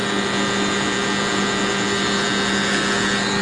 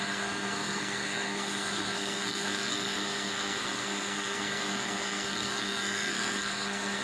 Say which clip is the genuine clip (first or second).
first